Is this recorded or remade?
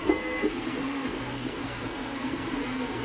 remade